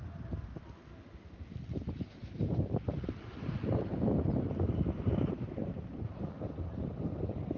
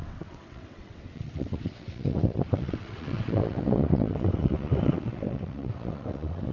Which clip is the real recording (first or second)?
first